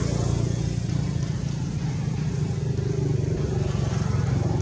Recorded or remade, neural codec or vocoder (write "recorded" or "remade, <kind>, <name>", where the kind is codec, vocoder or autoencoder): recorded